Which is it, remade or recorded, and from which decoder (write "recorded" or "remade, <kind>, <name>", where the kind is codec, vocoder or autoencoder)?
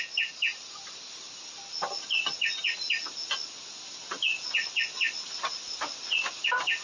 recorded